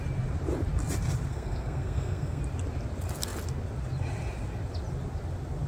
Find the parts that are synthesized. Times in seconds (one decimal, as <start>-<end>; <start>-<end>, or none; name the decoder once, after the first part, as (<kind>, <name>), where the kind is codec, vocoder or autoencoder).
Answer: 1.3-2.4 (codec, SNAC)